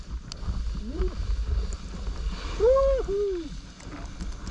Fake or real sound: real